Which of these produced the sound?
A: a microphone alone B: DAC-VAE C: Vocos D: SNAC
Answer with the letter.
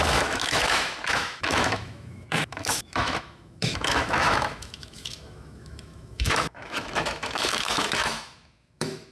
B